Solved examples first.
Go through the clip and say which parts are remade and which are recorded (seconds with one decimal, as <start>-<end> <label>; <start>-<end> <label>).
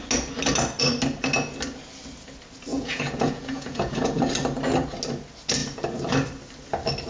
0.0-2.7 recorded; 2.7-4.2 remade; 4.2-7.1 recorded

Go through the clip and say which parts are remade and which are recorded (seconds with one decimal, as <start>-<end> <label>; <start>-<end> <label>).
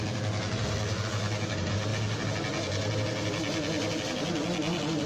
0.0-5.1 recorded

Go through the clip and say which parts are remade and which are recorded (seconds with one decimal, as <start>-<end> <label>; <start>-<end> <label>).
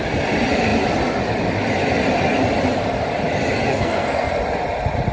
0.0-3.7 recorded; 3.7-4.3 remade; 4.3-5.1 recorded